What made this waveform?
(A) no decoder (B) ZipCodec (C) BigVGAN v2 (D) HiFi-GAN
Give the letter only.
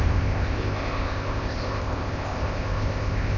B